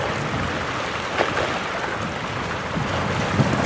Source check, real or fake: real